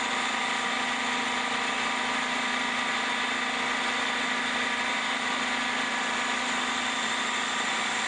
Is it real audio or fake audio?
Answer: real